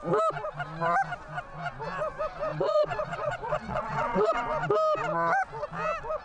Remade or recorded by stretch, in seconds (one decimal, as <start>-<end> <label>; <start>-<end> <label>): 0.0-2.5 recorded; 2.5-4.3 remade; 4.3-6.2 recorded